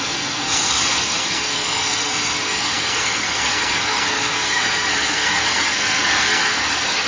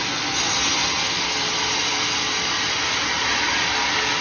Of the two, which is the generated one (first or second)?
first